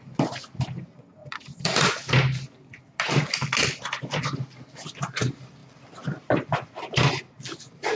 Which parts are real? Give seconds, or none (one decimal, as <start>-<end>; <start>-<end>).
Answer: 0.0-1.2; 2.0-5.6; 7.1-8.0